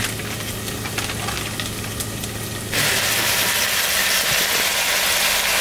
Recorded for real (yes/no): yes